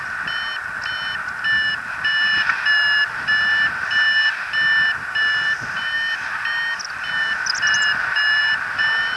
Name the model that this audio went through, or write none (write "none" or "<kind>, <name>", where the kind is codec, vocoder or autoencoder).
none